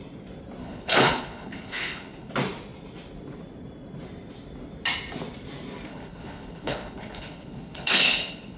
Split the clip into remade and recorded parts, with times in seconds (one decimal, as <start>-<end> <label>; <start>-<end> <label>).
0.0-0.6 recorded; 0.6-2.3 remade; 2.3-5.9 recorded; 5.9-8.6 remade